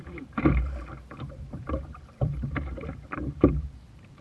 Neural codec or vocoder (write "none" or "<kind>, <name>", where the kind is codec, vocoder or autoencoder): vocoder, BigVGAN v2